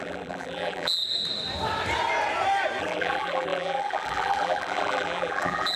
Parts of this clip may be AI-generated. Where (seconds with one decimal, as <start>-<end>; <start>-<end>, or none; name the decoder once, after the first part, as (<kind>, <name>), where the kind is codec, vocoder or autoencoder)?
0.0-1.0 (vocoder, BigVGAN v2); 2.8-5.8